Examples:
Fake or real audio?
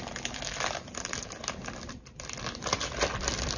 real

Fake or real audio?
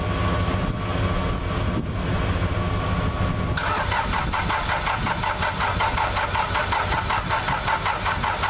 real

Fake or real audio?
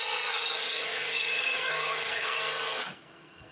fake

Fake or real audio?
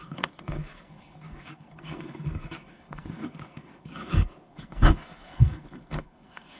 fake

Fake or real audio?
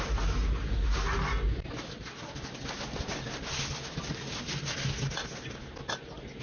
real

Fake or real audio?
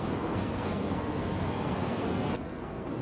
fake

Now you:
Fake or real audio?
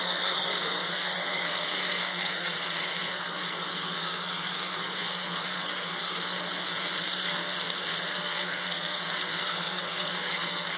fake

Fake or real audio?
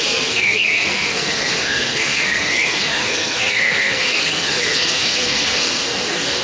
fake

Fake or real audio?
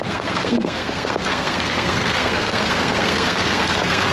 fake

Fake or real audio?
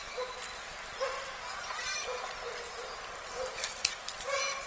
real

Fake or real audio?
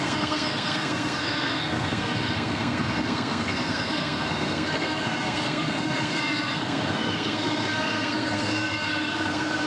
fake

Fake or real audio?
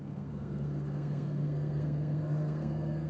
fake